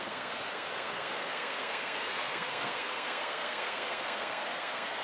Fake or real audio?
fake